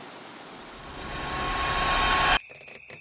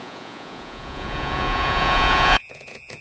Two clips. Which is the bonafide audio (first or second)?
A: first